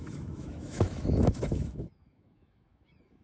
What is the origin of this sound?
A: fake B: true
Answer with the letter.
A